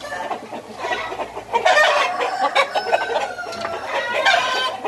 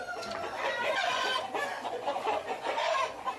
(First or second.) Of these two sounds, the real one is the first